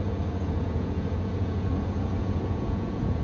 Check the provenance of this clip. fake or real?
fake